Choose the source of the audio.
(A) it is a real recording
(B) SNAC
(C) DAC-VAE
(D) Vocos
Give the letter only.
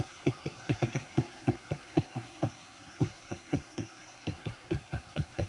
B